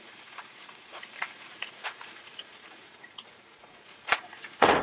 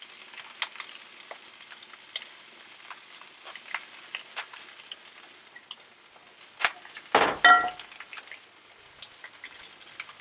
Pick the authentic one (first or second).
second